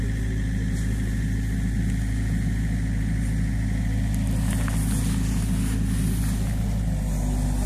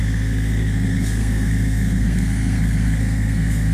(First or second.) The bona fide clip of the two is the first